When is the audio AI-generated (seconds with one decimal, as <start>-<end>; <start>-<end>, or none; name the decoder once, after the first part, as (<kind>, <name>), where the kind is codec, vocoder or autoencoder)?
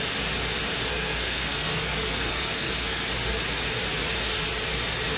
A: 0.9-3.1 (codec, SNAC)